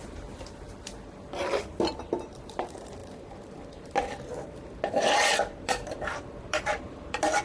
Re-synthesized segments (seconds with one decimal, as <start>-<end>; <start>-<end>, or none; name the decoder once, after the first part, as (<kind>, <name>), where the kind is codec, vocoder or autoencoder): 0.0-3.0 (vocoder, BigVGAN v2); 4.9-7.4